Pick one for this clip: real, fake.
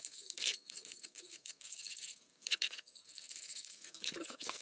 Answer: fake